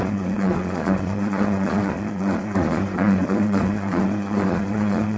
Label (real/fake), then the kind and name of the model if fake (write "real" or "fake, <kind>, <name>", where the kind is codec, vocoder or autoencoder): fake, vocoder, Vocos